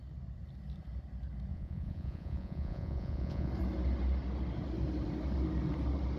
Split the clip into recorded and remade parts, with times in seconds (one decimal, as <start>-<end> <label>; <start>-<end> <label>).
0.0-1.5 recorded; 1.5-3.5 remade; 3.5-6.2 recorded